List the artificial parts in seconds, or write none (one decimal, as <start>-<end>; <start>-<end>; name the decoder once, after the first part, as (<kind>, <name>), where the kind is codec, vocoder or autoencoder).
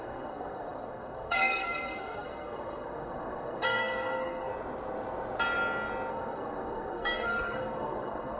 0.0-4.5 (codec, SNAC); 6.1-8.4